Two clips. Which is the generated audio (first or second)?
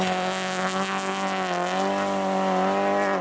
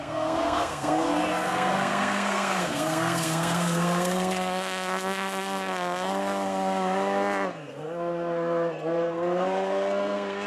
second